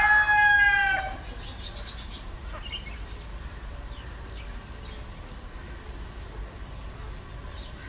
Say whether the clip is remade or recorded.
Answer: recorded